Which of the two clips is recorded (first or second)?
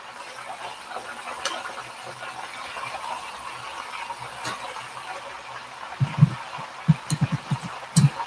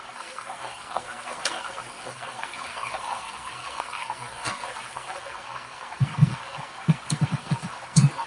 first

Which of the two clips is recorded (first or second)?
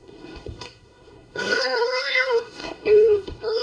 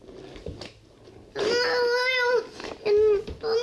second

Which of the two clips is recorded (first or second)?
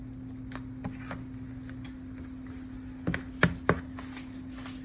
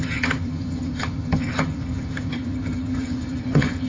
first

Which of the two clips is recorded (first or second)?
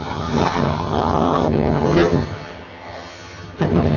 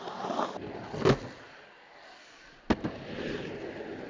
second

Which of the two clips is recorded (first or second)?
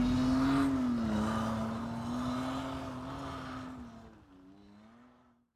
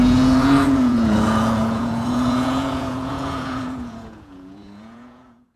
first